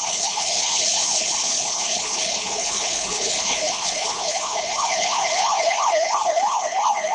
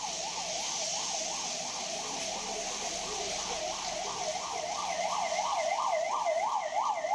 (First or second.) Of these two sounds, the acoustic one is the second